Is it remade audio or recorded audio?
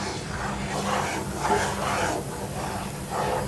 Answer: recorded